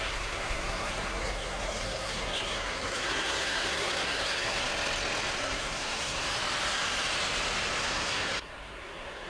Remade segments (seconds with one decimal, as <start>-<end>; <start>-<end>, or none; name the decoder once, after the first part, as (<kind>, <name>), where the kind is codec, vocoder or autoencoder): 0.0-4.7 (codec, SNAC); 5.4-6.3; 7.8-9.3